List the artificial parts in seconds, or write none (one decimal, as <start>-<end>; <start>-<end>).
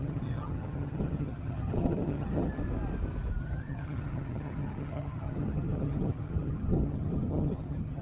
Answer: 0.0-2.6; 3.4-8.0